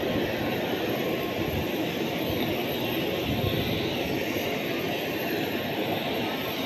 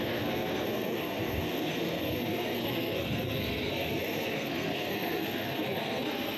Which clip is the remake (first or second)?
second